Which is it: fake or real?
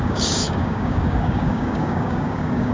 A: fake